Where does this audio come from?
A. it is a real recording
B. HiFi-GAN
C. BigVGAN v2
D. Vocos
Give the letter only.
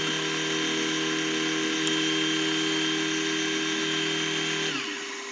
A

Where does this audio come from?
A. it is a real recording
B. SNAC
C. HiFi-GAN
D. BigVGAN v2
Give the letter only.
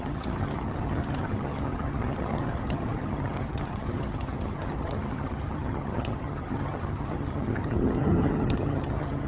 C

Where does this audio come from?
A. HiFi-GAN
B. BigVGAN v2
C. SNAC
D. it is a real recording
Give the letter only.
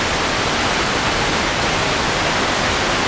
D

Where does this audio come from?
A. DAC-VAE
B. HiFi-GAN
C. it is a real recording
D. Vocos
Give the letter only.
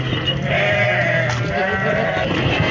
C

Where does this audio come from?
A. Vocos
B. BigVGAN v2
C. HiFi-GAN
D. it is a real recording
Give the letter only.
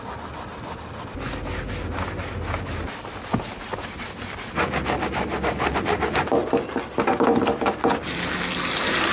D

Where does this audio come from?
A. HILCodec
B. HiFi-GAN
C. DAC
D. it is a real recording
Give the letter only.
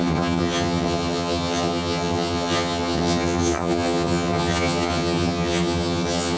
B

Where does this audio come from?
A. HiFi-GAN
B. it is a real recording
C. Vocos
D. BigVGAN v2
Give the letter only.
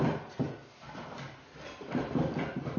B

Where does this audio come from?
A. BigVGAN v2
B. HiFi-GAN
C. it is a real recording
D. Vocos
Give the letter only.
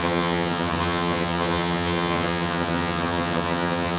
B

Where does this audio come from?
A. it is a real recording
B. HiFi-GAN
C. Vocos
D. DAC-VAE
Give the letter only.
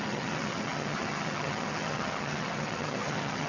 B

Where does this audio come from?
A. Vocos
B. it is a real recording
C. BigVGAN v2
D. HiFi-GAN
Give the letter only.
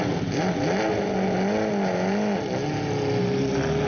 B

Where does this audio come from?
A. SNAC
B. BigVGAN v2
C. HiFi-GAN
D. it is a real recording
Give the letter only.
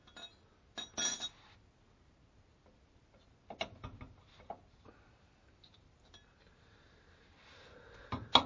D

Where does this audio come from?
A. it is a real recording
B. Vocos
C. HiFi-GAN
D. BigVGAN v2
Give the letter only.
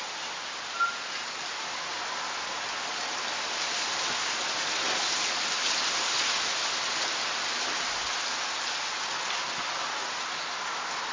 A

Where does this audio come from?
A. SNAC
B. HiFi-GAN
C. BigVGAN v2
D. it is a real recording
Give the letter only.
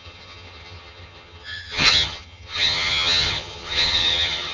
B